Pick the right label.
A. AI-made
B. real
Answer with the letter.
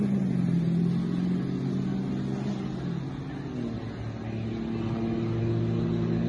B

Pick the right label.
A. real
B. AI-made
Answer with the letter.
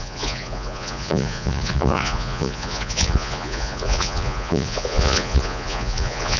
B